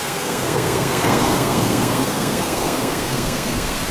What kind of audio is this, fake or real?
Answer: fake